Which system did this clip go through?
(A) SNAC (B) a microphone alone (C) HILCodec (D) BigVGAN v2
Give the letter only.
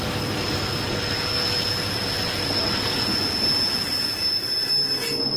B